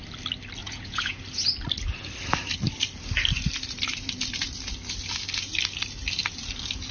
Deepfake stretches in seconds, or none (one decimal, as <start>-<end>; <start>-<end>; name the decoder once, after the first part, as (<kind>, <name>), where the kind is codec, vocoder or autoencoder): 0.6-1.2 (vocoder, Vocos)